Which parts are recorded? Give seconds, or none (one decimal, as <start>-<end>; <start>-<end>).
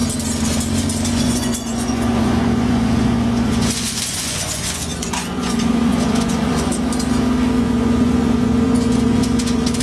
0.0-1.1; 6.7-7.6